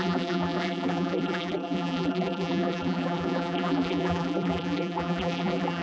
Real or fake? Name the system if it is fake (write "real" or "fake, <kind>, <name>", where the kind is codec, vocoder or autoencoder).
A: fake, vocoder, BigVGAN v2